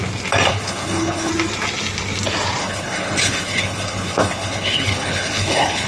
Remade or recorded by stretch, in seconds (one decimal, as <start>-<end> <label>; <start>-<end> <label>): 0.0-0.5 recorded; 0.5-1.3 remade; 1.3-2.6 recorded; 2.6-5.9 remade